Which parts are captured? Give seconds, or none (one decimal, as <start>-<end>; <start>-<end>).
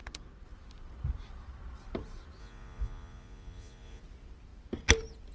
0.0-2.4; 4.0-5.3